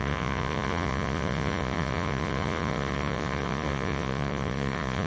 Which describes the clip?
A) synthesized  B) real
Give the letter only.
A